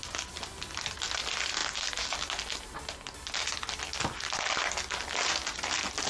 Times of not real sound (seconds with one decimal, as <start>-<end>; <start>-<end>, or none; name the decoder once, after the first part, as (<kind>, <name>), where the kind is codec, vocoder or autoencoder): none